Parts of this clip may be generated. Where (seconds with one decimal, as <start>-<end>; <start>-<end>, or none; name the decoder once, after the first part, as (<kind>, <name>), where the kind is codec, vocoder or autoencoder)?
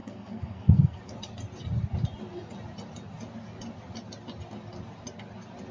0.0-1.0 (codec, SNAC)